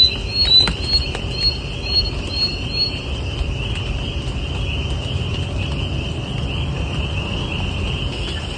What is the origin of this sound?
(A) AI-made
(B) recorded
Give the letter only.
B